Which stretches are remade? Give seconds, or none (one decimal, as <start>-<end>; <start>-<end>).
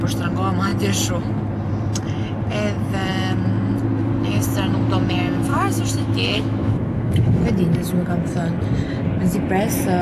5.5-7.4